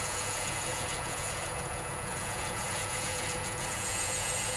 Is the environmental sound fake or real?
fake